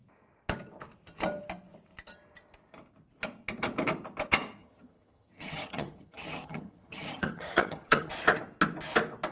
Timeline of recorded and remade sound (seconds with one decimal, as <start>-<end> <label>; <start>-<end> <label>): 0.0-4.6 recorded; 4.6-8.1 remade; 8.1-9.3 recorded